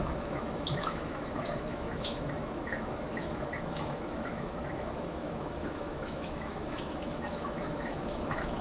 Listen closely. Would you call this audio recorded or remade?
remade